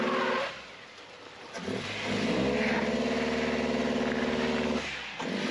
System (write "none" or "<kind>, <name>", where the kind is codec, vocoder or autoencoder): none